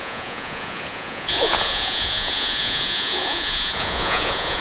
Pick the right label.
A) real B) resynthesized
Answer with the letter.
B